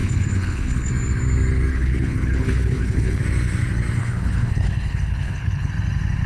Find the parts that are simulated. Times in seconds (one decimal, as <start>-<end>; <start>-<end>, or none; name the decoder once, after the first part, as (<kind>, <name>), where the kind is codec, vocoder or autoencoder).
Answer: 0.0-0.9 (codec, HILCodec); 1.7-3.2; 4.0-5.7